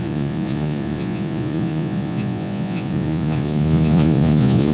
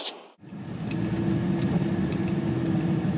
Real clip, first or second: second